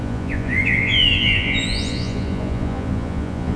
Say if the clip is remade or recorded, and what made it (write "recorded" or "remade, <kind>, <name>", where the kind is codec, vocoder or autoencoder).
remade, vocoder, Vocos